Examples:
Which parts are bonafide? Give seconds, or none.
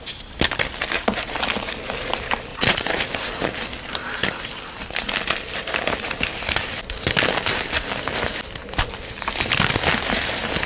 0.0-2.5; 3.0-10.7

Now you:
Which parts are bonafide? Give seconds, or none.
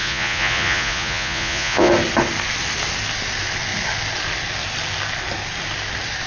1.9-6.3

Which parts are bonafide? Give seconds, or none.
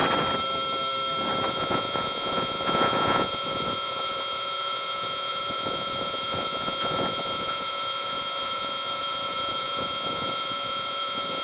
0.0-1.5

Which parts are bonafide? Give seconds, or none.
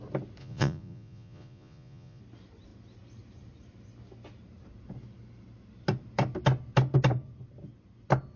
0.0-0.4; 2.2-8.4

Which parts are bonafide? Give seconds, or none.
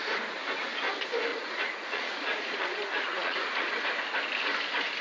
0.0-1.3; 3.8-5.0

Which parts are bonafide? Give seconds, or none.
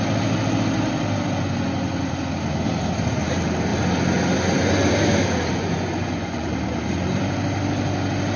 0.0-5.6; 6.5-8.4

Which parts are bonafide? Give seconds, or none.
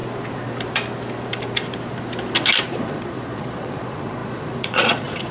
0.0-2.6